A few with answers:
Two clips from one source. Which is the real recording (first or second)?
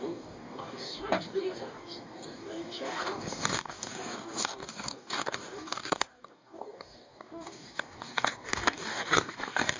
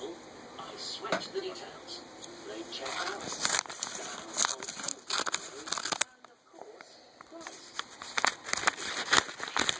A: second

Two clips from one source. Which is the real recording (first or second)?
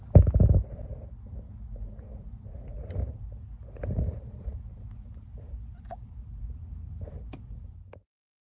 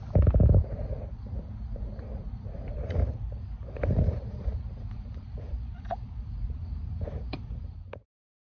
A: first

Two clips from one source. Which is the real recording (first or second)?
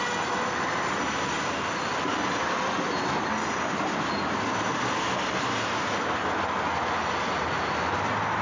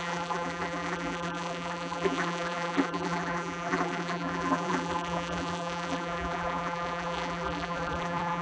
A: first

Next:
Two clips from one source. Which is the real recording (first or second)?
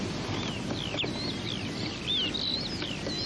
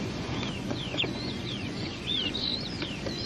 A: first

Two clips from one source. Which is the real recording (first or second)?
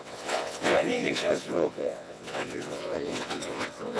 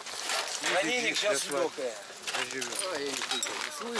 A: second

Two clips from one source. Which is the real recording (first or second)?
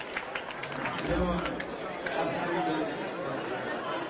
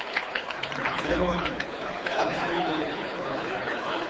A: first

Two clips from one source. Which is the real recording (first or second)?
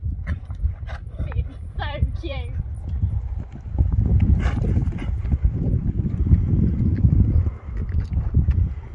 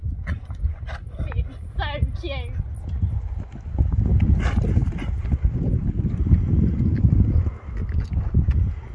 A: second